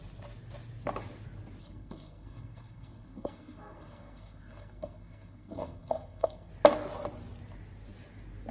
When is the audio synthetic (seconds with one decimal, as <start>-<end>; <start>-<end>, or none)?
1.6-6.5